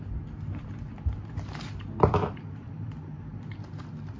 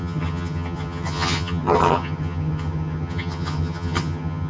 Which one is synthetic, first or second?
second